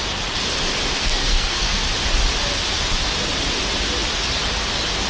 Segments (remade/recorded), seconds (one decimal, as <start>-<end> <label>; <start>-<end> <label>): 0.0-1.0 recorded; 1.0-1.8 remade; 1.8-5.1 recorded